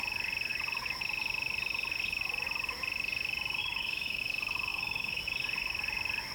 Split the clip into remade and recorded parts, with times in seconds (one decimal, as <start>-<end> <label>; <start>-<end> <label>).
0.0-3.6 recorded; 3.6-4.2 remade; 4.2-4.7 recorded; 4.7-5.2 remade; 5.2-6.3 recorded